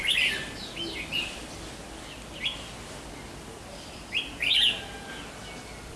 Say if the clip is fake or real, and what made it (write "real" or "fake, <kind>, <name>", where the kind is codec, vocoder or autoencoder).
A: real